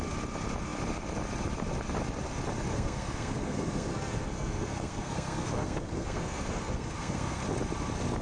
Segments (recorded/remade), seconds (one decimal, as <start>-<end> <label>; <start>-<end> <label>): 0.0-2.7 recorded; 2.7-7.4 remade; 7.4-8.2 recorded